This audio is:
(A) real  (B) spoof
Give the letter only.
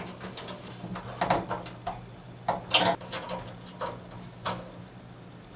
A